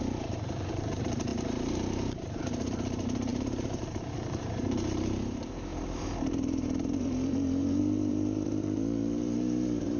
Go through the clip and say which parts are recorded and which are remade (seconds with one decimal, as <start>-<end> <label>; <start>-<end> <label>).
0.0-10.0 remade